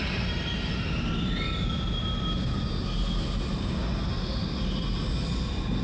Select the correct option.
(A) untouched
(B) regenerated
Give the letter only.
A